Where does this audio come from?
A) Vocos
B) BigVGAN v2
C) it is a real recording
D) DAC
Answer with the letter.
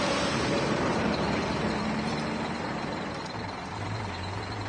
B